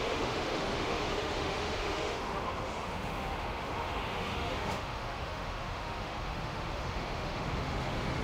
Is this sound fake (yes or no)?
yes